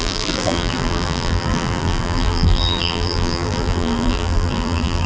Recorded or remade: remade